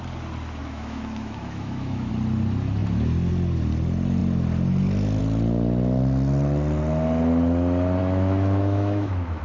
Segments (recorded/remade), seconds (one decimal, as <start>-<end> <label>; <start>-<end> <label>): 0.0-0.6 recorded; 0.6-2.1 remade; 2.1-8.0 recorded; 8.0-9.4 remade